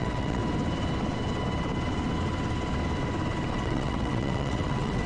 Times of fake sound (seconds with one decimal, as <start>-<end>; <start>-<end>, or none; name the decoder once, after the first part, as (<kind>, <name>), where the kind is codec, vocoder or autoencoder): 0.0-0.4 (vocoder, WaveNeXt); 3.5-5.1